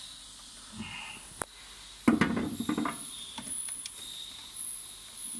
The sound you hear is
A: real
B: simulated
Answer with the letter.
A